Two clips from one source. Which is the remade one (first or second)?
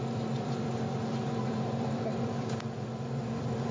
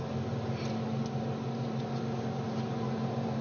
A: first